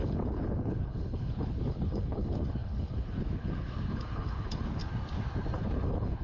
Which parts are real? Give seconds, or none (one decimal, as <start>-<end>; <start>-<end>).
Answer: 4.8-5.6